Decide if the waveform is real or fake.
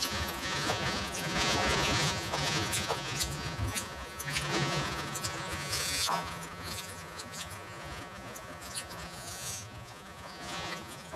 fake